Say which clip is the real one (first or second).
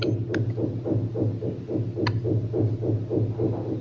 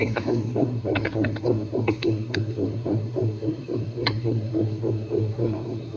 first